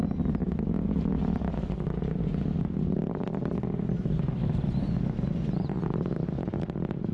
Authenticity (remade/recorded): recorded